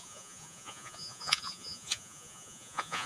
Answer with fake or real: fake